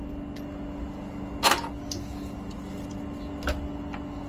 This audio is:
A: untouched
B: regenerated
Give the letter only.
A